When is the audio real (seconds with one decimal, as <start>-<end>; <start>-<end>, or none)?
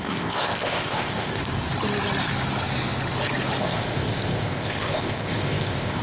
1.4-3.6